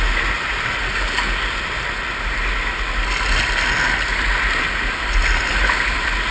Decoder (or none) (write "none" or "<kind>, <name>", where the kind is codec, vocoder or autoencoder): none